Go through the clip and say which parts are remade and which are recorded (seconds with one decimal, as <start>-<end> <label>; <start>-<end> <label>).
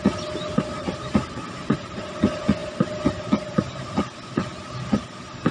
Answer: 0.0-5.5 recorded